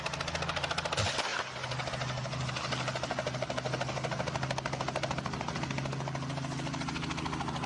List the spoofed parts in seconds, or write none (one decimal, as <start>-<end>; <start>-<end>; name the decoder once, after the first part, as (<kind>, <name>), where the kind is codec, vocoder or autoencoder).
none